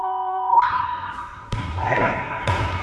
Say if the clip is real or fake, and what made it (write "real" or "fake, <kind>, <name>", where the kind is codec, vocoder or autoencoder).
fake, codec, SNAC